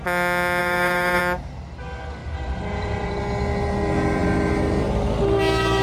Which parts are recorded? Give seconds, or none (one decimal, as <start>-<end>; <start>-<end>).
0.0-0.6; 1.2-2.2; 3.2-5.8